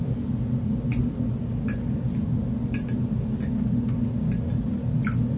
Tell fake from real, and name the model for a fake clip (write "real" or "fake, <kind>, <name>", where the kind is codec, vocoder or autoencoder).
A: real